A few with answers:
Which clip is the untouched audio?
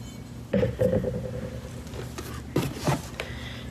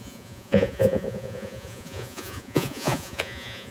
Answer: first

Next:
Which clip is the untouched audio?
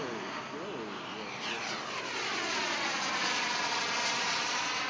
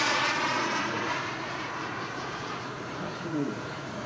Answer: first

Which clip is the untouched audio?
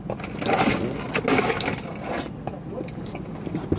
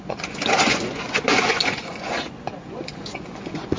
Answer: first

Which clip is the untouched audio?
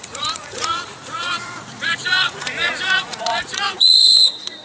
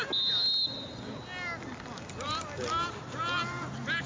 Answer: second